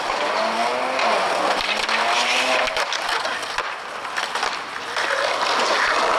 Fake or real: real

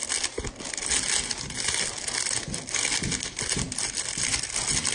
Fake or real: real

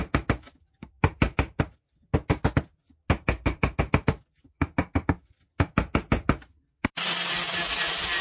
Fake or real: real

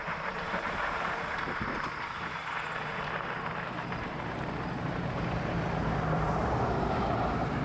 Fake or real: fake